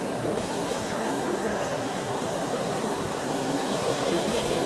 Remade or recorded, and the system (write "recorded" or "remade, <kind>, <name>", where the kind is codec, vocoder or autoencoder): remade, codec, SNAC